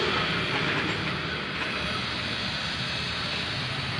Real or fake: fake